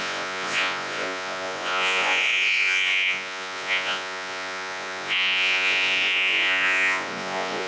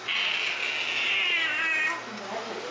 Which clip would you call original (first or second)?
second